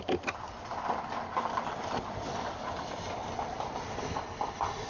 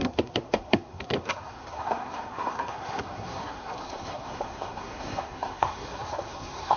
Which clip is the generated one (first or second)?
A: second